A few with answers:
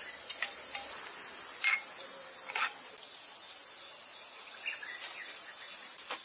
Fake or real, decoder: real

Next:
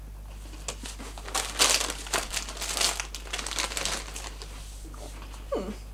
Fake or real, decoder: real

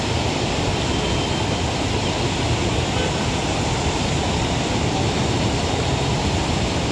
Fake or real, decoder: real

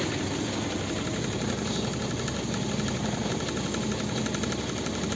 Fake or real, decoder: real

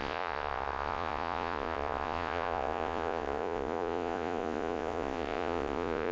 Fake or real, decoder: fake, vocoder, Vocos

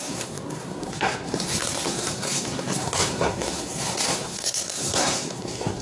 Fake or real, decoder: fake, codec, SNAC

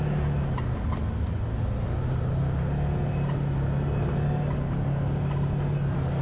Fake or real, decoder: real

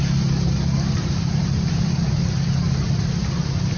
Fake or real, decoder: real